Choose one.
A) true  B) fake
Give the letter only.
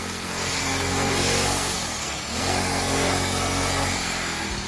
B